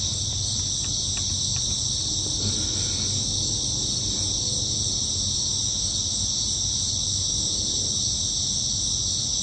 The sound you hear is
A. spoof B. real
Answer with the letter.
B